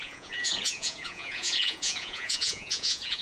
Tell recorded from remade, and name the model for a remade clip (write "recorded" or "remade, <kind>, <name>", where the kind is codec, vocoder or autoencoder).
remade, vocoder, Vocos